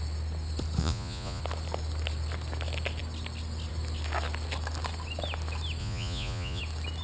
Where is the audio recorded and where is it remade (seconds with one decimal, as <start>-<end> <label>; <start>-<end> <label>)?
0.0-0.8 recorded; 0.8-1.4 remade; 1.4-5.8 recorded; 5.8-6.6 remade; 6.6-7.0 recorded